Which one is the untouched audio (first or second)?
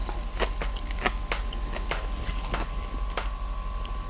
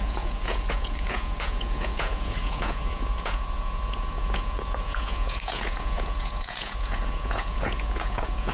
first